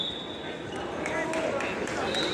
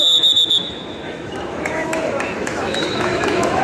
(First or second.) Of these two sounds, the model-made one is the second